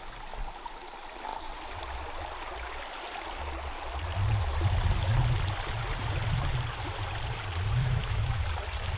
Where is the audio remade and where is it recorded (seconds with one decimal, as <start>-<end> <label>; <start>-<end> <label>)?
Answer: 0.0-7.8 recorded; 7.8-8.4 remade; 8.4-9.0 recorded